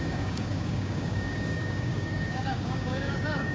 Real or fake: fake